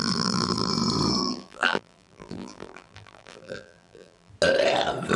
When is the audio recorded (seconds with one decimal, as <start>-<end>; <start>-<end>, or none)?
0.7-1.2; 4.3-5.2